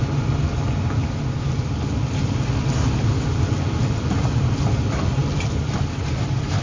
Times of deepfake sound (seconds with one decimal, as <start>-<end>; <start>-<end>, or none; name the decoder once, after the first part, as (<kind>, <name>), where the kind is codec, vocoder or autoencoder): none